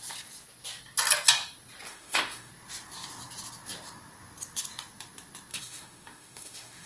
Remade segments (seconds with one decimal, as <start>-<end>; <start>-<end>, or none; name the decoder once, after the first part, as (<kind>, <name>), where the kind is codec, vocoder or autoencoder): 1.9-2.5 (autoencoder, DAC-VAE); 5.5-6.9